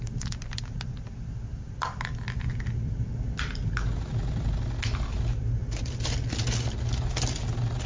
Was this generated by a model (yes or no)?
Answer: no